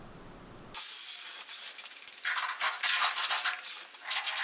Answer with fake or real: real